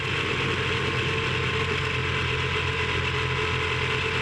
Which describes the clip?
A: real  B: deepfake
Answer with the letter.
A